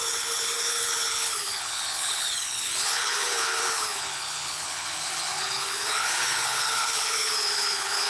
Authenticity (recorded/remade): remade